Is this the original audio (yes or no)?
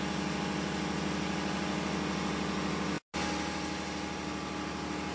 yes